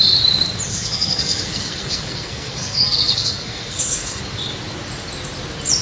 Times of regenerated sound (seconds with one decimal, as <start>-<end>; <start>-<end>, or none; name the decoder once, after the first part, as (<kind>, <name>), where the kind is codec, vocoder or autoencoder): 0.7-4.2 (codec, SNAC)